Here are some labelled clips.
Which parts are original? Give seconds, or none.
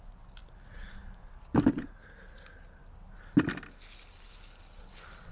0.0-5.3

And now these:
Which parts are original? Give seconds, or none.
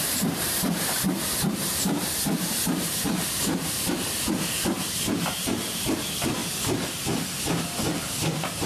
6.4-8.0